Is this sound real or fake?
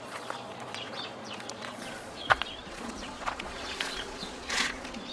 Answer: fake